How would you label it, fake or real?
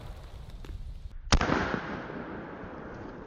real